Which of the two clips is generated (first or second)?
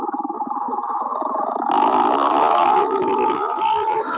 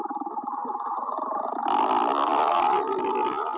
first